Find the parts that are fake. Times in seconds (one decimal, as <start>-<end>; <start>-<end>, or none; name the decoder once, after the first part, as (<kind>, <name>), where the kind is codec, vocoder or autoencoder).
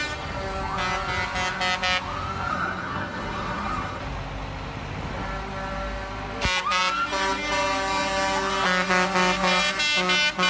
2.5-4.0 (codec, SNAC)